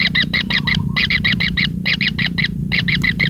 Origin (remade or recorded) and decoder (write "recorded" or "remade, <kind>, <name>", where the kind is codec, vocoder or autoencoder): remade, vocoder, BigVGAN v2